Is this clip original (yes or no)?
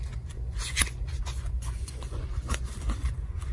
no